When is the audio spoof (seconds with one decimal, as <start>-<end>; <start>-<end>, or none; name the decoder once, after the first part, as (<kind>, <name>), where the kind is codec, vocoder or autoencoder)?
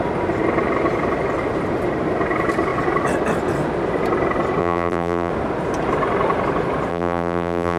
4.6-5.3 (vocoder, BigVGAN v2); 6.9-7.8